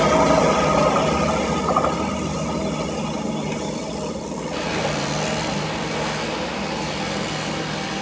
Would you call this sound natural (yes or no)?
yes